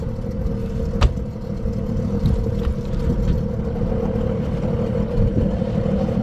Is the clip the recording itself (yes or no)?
yes